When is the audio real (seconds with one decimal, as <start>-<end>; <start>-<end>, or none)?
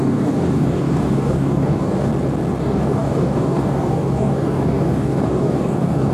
2.1-2.6